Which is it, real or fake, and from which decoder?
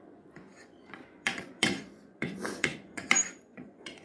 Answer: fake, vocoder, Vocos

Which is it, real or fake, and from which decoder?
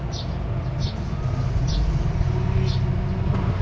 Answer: real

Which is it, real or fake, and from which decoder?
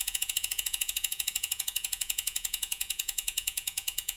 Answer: fake, vocoder, Vocos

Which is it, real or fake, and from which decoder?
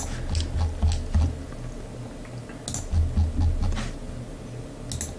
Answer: real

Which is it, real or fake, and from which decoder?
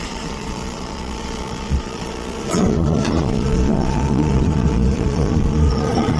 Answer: fake, vocoder, Vocos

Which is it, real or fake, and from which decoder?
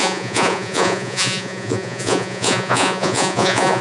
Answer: fake, vocoder, Vocos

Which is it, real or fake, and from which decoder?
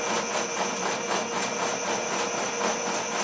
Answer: real